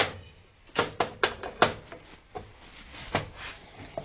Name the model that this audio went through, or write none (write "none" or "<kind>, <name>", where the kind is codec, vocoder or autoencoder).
none